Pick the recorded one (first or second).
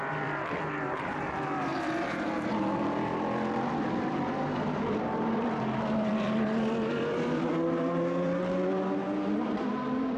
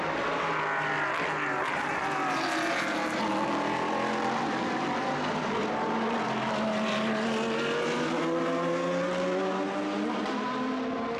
second